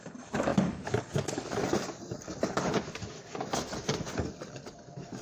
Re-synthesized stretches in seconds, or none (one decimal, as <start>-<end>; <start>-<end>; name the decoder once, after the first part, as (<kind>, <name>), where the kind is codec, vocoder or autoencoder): 0.0-5.2 (codec, DAC)

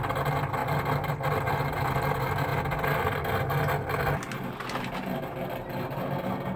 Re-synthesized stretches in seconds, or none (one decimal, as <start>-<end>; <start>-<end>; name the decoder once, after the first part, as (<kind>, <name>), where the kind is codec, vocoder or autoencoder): none